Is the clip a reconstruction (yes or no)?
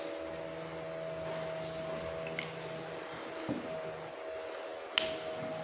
no